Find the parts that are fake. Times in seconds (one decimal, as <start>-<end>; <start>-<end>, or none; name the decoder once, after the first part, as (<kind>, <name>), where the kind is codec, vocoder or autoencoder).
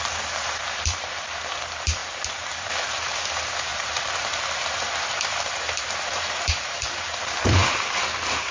0.0-2.0 (vocoder, BigVGAN v2); 2.8-8.5